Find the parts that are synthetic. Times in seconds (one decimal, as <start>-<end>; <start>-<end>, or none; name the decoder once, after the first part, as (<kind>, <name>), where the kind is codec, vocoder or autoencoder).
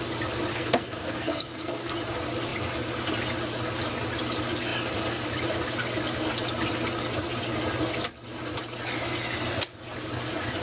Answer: 0.5-1.9 (codec, SNAC)